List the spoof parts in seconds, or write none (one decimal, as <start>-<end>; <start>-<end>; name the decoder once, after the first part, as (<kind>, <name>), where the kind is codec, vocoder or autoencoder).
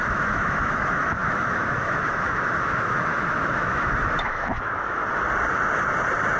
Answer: 0.0-5.0 (autoencoder, DAC-VAE)